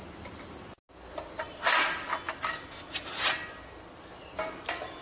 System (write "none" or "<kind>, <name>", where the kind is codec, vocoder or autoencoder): none